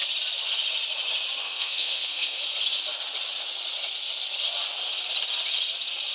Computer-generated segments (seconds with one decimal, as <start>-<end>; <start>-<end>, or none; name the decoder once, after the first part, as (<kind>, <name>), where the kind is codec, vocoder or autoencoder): 1.4-2.4 (codec, SNAC)